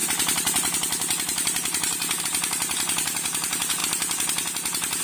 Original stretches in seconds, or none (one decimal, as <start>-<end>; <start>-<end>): 0.0-5.0